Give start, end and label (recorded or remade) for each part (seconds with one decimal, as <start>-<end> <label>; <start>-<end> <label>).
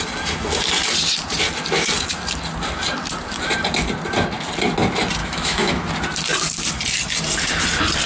0.0-5.2 recorded; 5.2-5.9 remade; 5.9-8.1 recorded